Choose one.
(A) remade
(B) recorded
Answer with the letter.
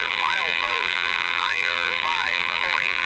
A